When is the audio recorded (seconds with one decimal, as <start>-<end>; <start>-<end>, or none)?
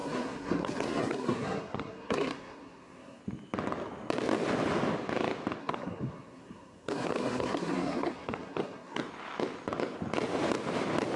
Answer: 3.2-5.6; 9.0-11.2